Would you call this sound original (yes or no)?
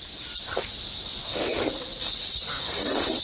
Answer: yes